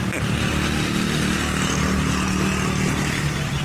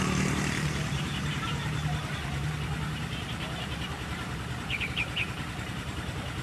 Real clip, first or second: first